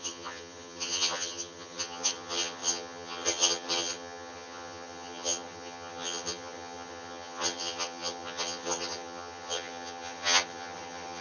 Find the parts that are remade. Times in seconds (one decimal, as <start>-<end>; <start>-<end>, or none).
0.0-11.2